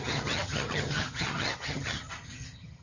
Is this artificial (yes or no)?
yes